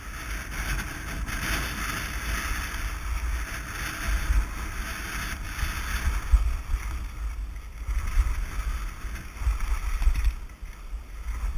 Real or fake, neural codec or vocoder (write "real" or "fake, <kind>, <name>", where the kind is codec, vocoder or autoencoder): real